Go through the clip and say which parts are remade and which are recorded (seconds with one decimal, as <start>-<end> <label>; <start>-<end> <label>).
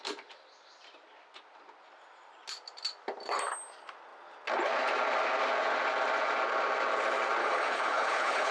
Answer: 0.0-7.4 recorded; 7.4-8.5 remade